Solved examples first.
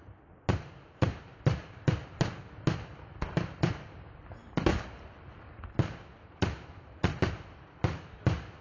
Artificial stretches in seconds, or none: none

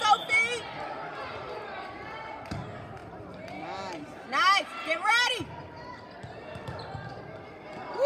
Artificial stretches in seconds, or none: none

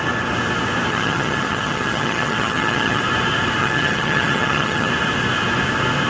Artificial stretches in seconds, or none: 0.9-3.0 (vocoder, HiFi-GAN); 3.6-4.9

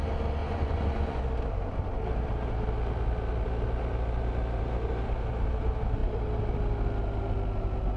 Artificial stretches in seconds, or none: 0.4-1.2 (vocoder, Vocos)